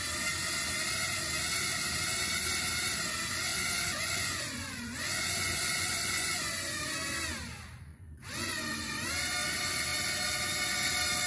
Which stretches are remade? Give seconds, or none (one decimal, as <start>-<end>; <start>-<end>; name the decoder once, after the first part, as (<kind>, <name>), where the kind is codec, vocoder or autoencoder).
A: 3.5-6.8 (vocoder, Vocos); 7.9-9.1